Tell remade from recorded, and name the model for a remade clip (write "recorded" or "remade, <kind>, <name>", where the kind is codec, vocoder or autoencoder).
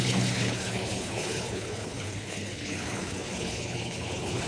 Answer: remade, codec, HILCodec